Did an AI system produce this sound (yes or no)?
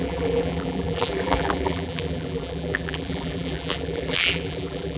yes